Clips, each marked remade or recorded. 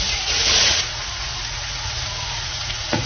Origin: remade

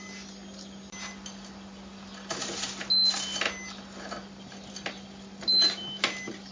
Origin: recorded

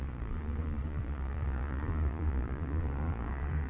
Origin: remade